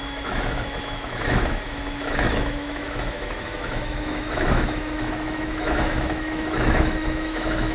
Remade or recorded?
remade